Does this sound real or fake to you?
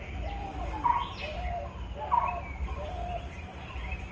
real